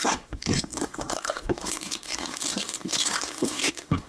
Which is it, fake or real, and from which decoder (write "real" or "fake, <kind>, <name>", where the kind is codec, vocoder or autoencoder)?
fake, codec, SNAC